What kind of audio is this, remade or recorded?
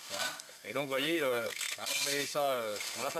remade